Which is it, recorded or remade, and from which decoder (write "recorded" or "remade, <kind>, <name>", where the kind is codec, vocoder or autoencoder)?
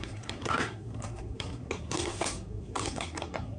remade, codec, SNAC